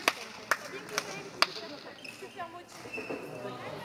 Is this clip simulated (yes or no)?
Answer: no